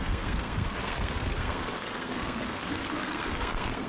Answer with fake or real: fake